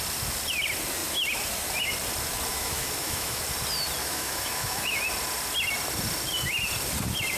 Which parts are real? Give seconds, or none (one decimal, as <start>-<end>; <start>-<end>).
0.0-2.5; 3.4-4.0; 5.0-7.4